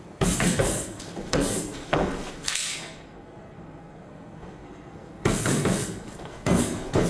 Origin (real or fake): fake